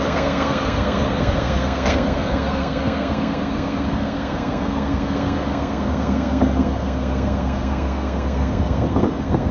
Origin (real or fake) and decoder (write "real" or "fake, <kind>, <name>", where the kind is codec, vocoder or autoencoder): fake, codec, SNAC